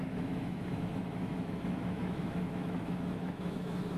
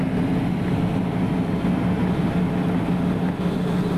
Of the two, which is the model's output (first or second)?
first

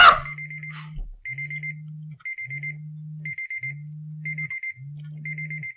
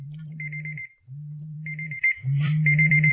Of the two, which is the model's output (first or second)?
second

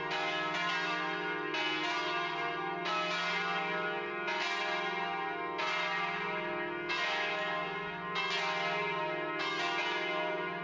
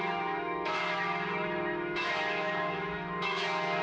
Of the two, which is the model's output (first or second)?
second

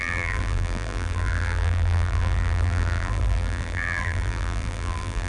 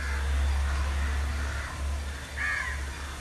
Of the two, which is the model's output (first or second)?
first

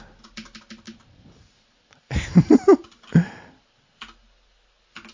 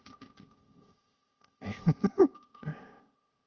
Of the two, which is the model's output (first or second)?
second